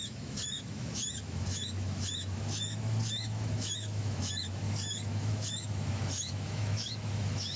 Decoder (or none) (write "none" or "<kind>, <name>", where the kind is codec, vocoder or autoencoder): autoencoder, DAC-VAE